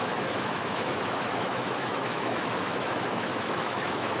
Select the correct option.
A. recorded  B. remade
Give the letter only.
B